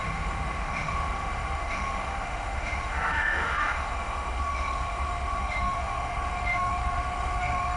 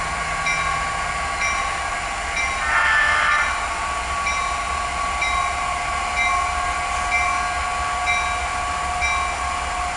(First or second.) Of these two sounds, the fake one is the first